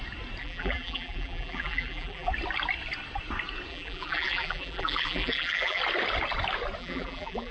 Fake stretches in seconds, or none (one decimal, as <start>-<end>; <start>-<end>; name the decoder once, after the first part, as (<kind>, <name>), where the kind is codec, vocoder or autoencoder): 0.4-2.3 (vocoder, BigVGAN v2); 3.7-5.8; 6.8-7.5